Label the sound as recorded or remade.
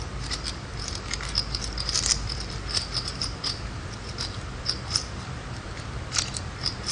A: recorded